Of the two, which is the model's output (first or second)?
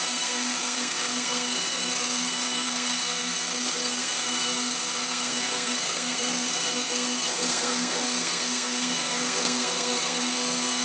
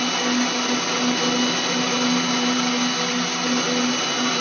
first